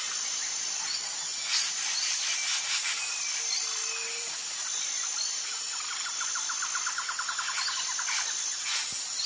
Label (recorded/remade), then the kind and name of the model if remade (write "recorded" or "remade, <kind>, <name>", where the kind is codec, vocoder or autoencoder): recorded